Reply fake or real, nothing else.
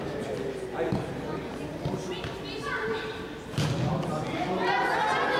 real